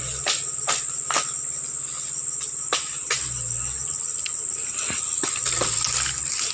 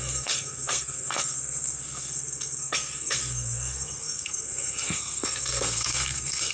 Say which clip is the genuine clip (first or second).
first